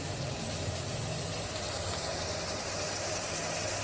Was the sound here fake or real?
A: real